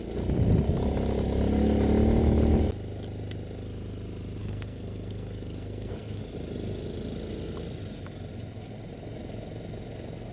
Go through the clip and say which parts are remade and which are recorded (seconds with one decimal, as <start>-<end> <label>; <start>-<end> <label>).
0.0-4.4 recorded; 4.4-6.2 remade; 6.2-10.3 recorded